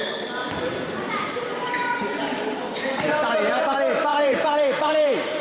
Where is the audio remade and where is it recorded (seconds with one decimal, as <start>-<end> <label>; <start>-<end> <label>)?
0.0-0.4 recorded; 0.4-3.6 remade; 3.6-4.1 recorded; 4.1-5.4 remade

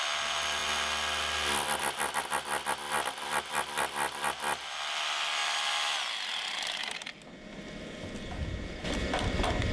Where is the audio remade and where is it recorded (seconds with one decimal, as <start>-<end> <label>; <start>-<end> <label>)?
0.0-9.7 recorded

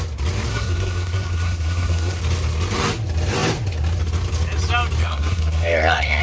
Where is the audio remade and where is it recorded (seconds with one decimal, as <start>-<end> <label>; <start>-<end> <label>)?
0.0-0.5 recorded; 0.5-2.2 remade; 2.2-5.0 recorded; 5.0-6.2 remade

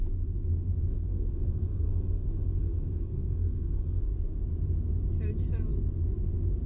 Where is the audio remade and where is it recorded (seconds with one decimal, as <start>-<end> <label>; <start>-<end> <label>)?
0.0-0.9 recorded; 0.9-4.0 remade; 4.0-6.7 recorded

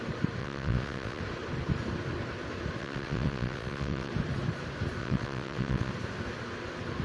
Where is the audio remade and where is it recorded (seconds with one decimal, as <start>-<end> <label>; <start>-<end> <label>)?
0.0-0.4 recorded; 0.4-1.2 remade; 1.2-2.8 recorded; 2.8-4.1 remade; 4.1-5.0 recorded; 5.0-5.9 remade; 5.9-7.0 recorded

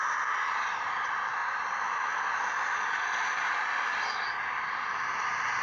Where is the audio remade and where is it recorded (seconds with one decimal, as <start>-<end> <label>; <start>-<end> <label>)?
0.0-5.6 recorded

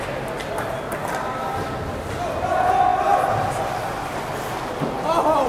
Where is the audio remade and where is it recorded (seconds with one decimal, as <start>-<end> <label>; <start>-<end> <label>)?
0.0-5.5 recorded

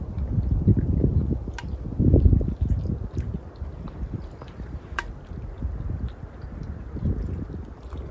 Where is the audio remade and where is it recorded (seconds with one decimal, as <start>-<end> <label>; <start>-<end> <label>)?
0.0-8.1 recorded